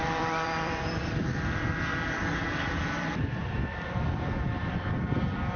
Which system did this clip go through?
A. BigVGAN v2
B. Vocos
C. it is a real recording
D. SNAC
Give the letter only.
A